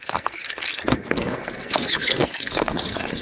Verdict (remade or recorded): remade